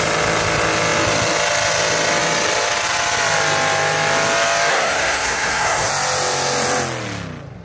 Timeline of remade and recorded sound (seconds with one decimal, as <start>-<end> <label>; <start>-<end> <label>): 0.0-4.7 recorded; 4.7-5.9 remade; 5.9-7.6 recorded